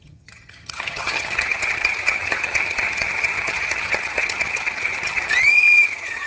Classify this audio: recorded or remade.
remade